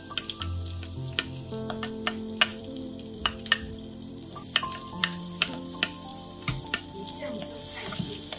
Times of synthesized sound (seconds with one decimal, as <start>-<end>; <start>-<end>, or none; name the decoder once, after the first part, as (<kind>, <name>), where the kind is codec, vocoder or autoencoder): 2.5-5.6 (vocoder, BigVGAN v2); 6.1-8.4

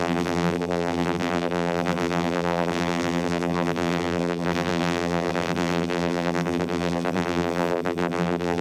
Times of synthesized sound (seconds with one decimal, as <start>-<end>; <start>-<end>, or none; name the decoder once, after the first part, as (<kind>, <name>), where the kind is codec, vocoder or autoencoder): 0.0-8.6 (vocoder, BigVGAN v2)

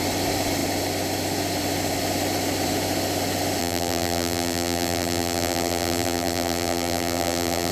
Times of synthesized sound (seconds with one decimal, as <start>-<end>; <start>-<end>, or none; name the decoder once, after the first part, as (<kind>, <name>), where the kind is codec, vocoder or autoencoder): 3.6-7.7 (vocoder, BigVGAN v2)

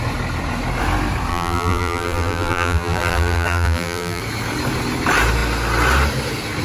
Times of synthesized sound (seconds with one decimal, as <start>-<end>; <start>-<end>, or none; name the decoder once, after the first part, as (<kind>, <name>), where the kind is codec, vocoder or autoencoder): 1.3-4.2 (vocoder, BigVGAN v2)

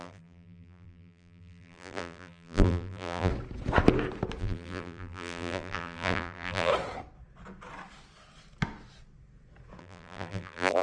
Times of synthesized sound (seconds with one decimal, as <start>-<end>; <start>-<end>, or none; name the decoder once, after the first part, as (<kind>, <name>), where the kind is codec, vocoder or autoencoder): 0.0-3.3 (vocoder, BigVGAN v2); 4.4-6.7; 9.8-10.8